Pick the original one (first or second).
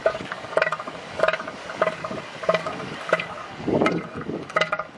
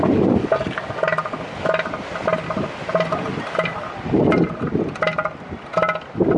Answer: second